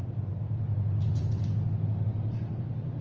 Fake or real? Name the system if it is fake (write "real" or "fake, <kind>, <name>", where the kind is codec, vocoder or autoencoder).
real